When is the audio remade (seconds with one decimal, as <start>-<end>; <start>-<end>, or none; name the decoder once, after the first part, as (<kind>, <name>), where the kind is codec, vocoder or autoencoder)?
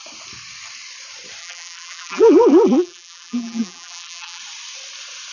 1.4-4.4 (vocoder, BigVGAN v2)